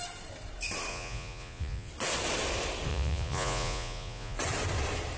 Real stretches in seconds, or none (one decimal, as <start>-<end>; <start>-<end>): 0.0-0.9; 1.9-2.9; 4.4-5.2